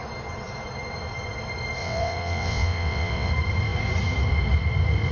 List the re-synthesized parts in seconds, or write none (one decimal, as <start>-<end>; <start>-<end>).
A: 1.8-3.3